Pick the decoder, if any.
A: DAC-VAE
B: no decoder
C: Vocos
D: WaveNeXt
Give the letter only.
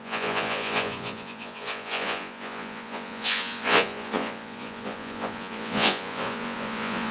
C